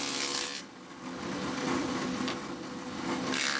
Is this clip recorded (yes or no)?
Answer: yes